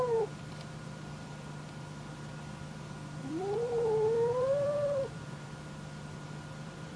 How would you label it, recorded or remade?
remade